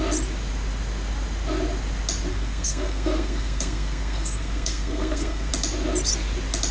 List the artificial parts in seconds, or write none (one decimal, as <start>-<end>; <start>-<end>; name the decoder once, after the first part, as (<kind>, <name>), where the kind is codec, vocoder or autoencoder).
2.3-5.5 (codec, SNAC)